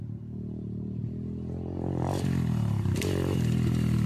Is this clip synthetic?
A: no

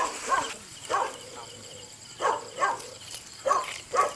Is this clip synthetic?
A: yes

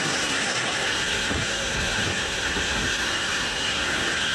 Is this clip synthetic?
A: yes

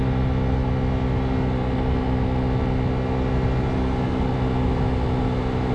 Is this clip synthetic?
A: no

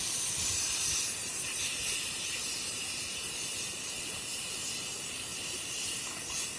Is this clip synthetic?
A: no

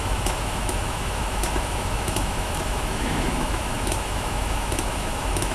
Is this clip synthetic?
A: yes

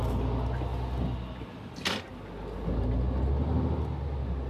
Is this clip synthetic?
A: no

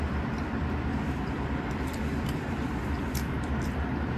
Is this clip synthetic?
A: yes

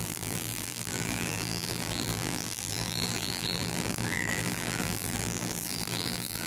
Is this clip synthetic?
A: yes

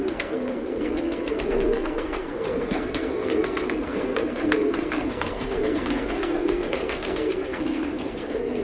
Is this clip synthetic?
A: yes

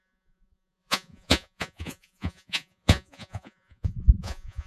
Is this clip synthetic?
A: yes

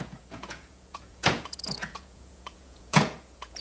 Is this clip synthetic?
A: yes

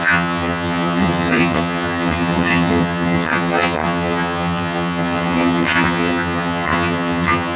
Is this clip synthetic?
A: yes